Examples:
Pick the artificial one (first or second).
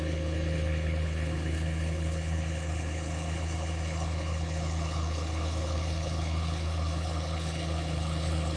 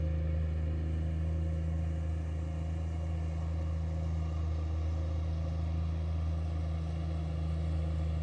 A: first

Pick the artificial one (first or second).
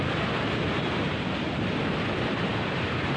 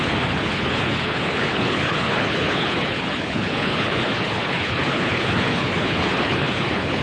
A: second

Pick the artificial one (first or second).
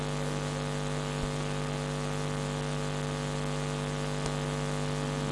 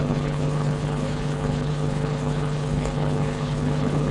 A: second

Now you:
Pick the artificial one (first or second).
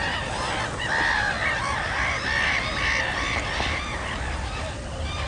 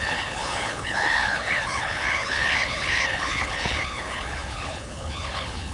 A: second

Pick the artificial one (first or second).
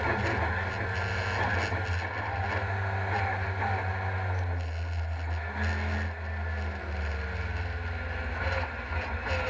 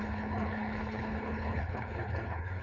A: second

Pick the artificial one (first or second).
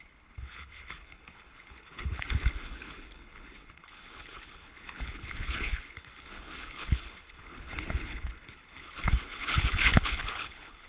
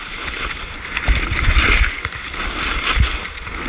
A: first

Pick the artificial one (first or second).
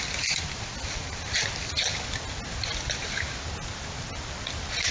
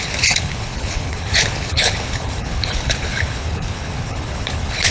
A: second